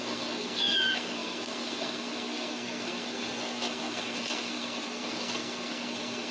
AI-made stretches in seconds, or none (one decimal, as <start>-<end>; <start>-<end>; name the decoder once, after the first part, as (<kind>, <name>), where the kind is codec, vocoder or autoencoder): 0.0-6.3 (codec, SNAC)